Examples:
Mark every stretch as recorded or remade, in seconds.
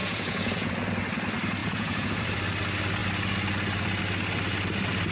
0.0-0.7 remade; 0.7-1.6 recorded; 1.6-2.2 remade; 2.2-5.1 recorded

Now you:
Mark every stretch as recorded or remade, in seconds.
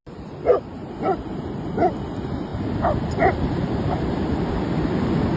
0.0-2.5 recorded; 2.5-4.5 remade; 4.5-5.4 recorded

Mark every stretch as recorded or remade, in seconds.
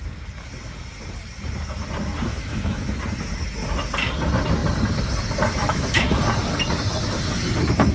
0.0-2.3 recorded; 2.3-3.0 remade; 3.0-5.6 recorded; 5.6-6.2 remade; 6.2-7.9 recorded